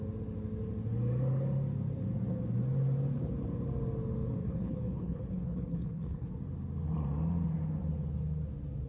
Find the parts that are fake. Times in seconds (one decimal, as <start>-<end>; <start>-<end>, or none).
4.4-6.3